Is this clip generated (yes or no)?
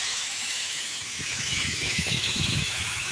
yes